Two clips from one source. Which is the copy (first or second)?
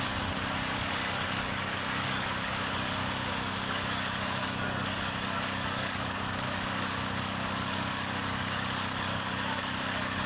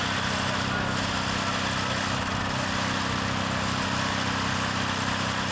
first